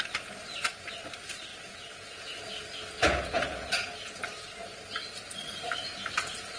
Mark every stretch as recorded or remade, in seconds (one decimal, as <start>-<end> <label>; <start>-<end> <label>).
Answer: 0.0-1.5 recorded; 1.5-2.2 remade; 2.2-3.0 recorded; 3.0-4.2 remade; 4.2-6.6 recorded